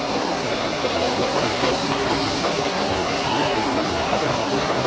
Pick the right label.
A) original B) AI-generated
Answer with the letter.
B